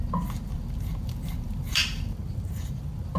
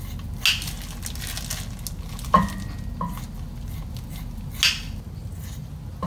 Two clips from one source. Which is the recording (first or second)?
second